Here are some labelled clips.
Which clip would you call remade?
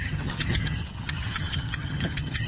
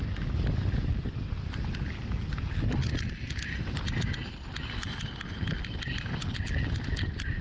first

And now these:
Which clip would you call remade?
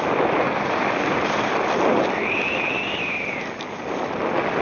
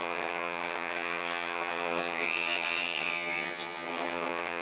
second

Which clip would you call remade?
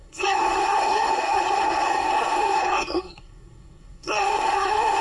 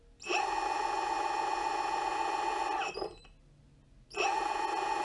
first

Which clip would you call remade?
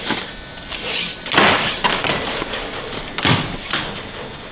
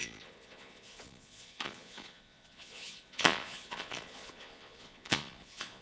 second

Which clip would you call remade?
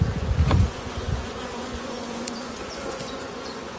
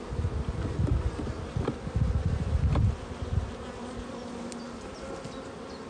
first